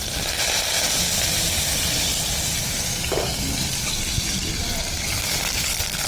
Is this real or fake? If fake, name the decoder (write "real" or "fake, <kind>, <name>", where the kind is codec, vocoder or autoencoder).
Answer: fake, vocoder, BigVGAN v2